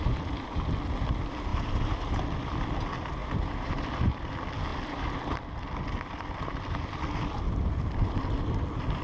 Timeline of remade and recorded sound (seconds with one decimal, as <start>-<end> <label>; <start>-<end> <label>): 0.0-1.5 recorded; 1.5-2.2 remade; 2.2-3.2 recorded; 3.2-4.3 remade; 4.3-9.0 recorded